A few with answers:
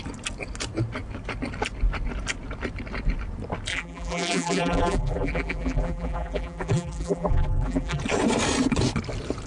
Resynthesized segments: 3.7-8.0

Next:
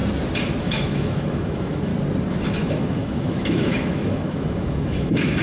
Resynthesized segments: 0.6-1.9; 2.5-5.4

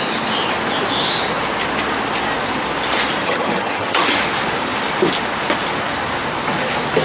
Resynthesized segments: 3.2-4.2

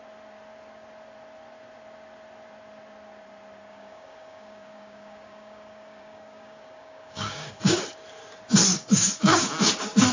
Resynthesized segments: 3.7-7.8; 8.7-9.7

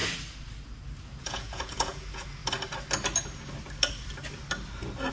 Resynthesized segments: 1.0-2.4